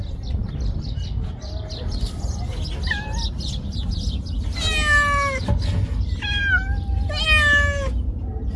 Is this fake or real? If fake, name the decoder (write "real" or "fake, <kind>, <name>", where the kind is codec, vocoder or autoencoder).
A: real